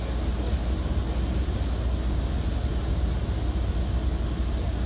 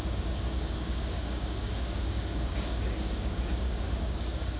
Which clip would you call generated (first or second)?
second